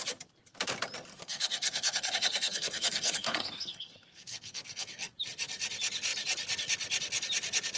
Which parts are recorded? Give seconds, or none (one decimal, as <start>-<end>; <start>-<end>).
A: 0.0-1.1; 5.1-7.8